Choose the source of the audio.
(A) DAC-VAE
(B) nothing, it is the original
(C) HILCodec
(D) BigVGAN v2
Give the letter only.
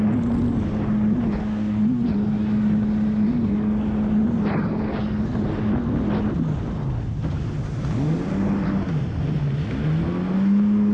B